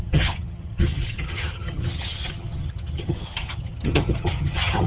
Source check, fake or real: fake